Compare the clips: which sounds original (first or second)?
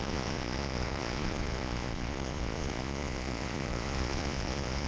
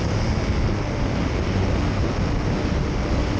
second